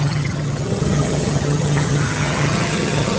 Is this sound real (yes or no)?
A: no